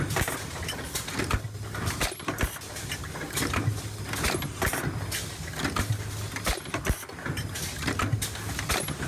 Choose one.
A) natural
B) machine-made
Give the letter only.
A